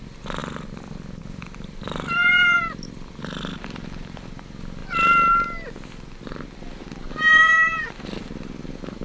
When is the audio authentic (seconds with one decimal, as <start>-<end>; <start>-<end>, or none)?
0.4-1.2; 4.8-6.3